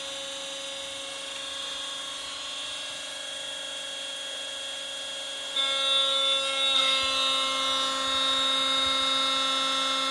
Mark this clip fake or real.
real